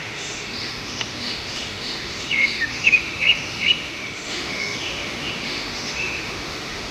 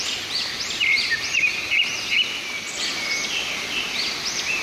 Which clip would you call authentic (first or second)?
second